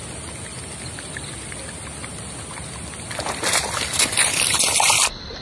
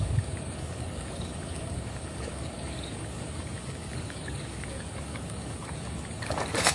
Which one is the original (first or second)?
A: first